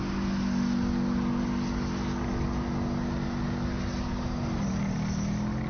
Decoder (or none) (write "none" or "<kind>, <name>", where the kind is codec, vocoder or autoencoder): none